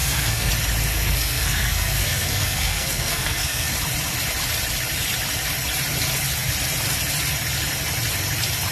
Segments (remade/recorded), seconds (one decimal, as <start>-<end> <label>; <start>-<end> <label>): 0.0-0.5 remade; 0.5-0.9 recorded; 0.9-3.7 remade; 3.7-8.7 recorded